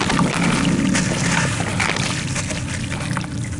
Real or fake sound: real